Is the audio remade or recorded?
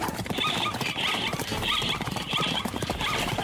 remade